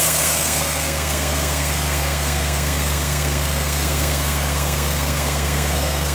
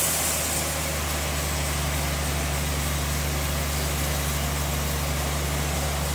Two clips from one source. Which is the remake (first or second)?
first